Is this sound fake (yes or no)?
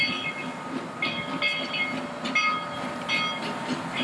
no